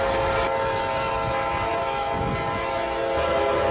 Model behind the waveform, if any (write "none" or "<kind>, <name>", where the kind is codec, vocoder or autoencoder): none